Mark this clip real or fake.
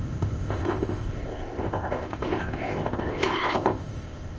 fake